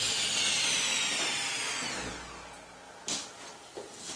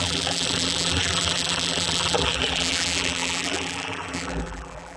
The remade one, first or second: second